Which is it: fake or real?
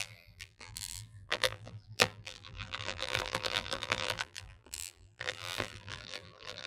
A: fake